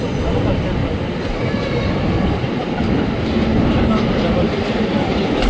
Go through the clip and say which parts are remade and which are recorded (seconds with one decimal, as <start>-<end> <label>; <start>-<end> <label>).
0.0-0.8 recorded; 0.8-2.7 remade; 2.7-3.5 recorded; 3.5-5.5 remade